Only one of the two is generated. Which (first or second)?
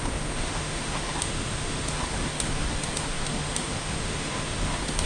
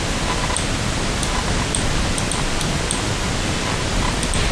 first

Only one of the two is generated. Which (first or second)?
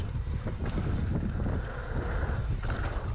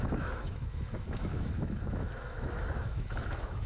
second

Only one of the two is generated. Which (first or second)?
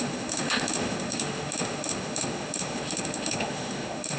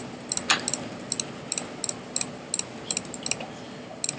first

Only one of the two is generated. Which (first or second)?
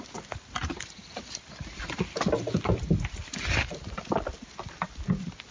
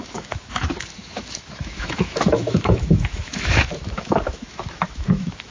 second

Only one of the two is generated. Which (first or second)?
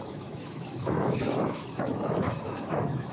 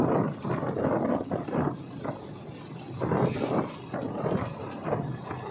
first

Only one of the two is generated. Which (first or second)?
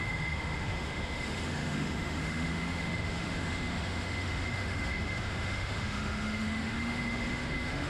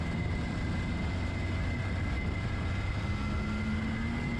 first